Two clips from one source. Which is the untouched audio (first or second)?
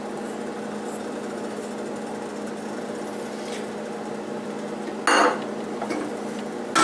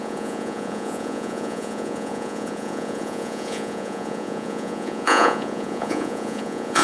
first